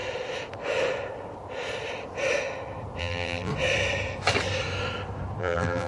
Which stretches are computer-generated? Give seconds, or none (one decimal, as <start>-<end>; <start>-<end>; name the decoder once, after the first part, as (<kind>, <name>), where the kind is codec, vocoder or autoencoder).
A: 3.0-3.5 (vocoder, BigVGAN v2); 5.4-5.9